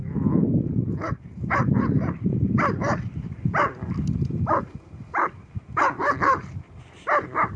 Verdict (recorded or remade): recorded